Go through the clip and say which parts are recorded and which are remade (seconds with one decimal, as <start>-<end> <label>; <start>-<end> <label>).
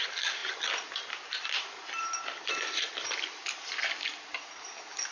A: 0.0-5.1 recorded